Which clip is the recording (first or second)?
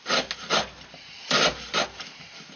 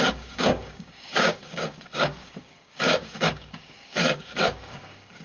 first